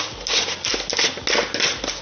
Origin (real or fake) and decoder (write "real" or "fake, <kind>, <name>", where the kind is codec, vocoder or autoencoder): real